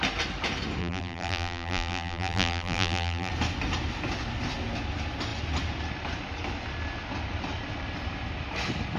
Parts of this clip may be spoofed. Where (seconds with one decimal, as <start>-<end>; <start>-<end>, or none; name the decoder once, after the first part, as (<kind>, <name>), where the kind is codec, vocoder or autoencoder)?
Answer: 0.8-3.3 (vocoder, BigVGAN v2)